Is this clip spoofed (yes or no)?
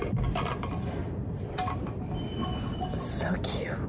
no